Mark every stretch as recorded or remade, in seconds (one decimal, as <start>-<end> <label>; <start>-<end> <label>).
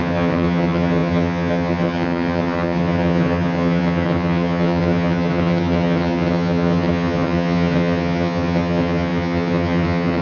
0.0-10.2 remade